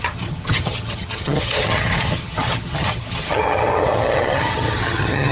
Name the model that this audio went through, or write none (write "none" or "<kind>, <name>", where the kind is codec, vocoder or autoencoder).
vocoder, HiFi-GAN